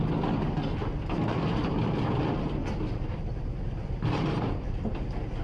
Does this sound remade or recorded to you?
recorded